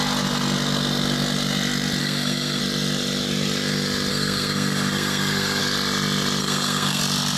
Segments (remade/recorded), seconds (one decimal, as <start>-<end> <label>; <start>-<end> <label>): 0.0-2.0 recorded; 2.0-2.6 remade; 2.6-4.1 recorded; 4.1-5.6 remade; 5.6-6.4 recorded; 6.4-7.0 remade; 7.0-7.4 recorded